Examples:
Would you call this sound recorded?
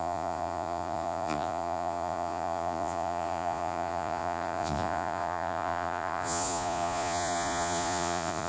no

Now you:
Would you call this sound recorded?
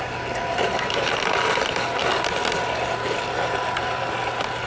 yes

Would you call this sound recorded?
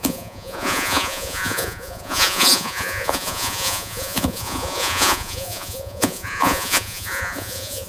no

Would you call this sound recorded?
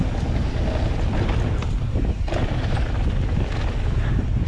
yes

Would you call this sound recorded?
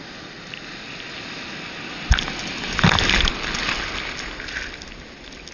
yes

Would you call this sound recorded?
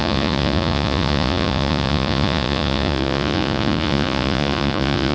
no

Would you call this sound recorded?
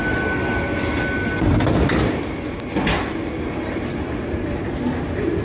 yes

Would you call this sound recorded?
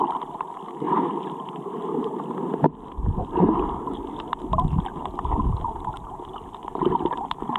yes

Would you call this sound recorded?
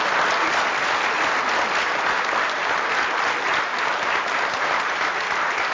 yes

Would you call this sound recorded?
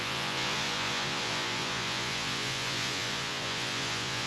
no